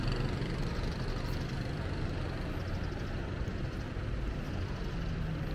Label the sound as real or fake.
real